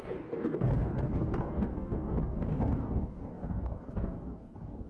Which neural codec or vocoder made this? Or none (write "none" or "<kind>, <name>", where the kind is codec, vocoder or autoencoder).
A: codec, DAC